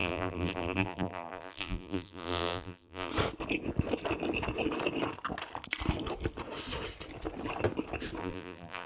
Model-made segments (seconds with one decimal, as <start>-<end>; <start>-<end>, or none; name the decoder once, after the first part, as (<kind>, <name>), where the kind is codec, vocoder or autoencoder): 0.0-3.1 (vocoder, BigVGAN v2); 8.2-8.9